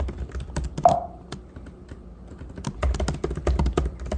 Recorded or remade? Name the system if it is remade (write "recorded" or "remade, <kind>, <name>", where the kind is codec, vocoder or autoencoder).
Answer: recorded